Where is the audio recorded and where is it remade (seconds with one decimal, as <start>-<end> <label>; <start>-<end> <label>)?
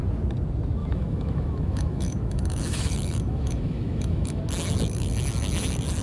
0.0-0.8 recorded; 0.8-4.4 remade; 4.4-6.0 recorded